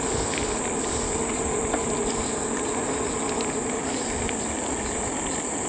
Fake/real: real